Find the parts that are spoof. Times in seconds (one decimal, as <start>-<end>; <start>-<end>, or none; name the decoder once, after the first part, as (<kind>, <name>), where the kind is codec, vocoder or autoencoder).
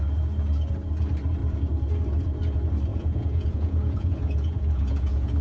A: 2.9-5.4 (vocoder, Vocos)